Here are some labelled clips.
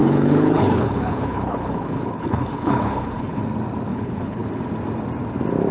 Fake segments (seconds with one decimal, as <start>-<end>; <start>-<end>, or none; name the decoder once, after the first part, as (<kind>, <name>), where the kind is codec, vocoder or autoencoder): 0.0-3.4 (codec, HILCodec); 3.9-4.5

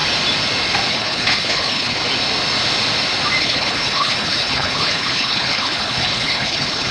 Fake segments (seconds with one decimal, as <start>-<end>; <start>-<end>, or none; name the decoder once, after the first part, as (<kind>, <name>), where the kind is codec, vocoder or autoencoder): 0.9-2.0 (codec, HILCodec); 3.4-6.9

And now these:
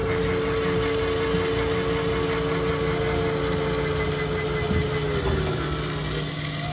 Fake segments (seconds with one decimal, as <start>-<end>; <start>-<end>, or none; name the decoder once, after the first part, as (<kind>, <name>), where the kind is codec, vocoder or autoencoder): none

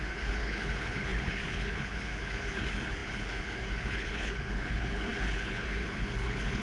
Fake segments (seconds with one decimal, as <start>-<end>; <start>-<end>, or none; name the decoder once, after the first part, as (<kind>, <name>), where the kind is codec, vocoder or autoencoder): 0.0-6.6 (codec, HILCodec)